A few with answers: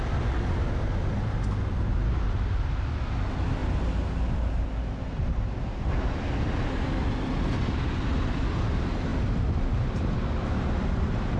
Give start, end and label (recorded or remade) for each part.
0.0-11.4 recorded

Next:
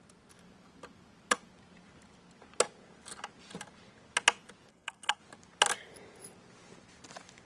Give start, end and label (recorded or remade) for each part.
0.0-4.7 recorded; 4.7-5.2 remade; 5.2-7.5 recorded

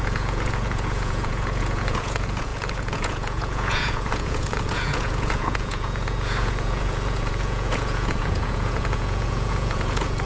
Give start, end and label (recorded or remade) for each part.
0.0-10.3 remade

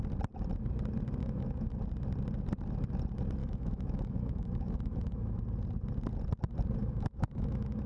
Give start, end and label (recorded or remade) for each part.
0.0-1.2 recorded; 1.2-1.8 remade; 1.8-3.4 recorded; 3.4-5.4 remade; 5.4-6.8 recorded; 6.8-7.9 remade